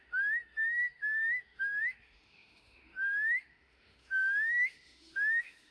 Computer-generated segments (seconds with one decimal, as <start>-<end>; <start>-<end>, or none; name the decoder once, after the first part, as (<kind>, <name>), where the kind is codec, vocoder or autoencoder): 0.0-5.7 (autoencoder, DAC-VAE)